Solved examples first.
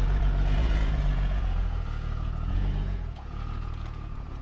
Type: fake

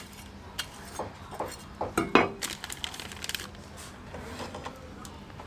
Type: real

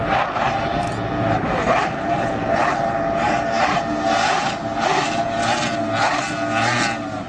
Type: real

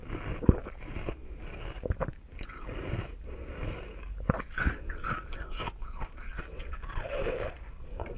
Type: real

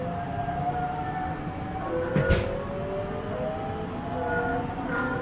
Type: real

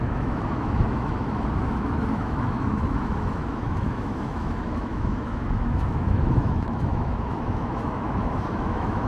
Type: fake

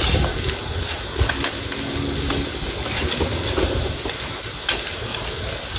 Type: real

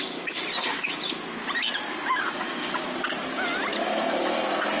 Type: real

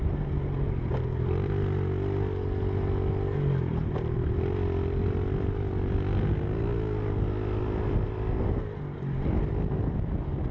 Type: real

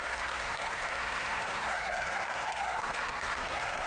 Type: fake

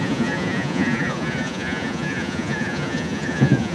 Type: fake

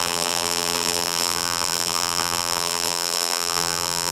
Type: fake